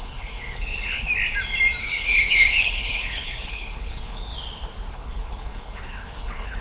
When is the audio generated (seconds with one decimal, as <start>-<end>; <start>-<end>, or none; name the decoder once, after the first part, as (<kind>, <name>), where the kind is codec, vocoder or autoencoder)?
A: 0.0-1.1 (codec, HILCodec); 1.8-4.3; 4.9-6.6